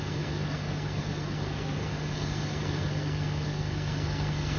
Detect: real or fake fake